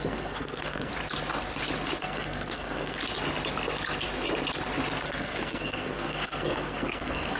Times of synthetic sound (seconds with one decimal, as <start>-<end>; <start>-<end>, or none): 0.0-0.9; 2.0-3.0; 5.0-7.4